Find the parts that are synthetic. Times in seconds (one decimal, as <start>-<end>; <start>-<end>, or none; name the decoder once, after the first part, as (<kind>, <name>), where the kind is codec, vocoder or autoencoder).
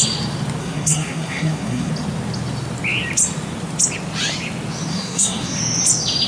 0.6-1.9 (codec, SNAC); 4.9-5.6